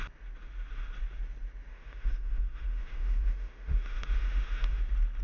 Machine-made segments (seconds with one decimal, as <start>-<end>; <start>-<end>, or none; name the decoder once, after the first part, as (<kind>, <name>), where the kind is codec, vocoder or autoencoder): 1.7-4.8 (autoencoder, DAC-VAE)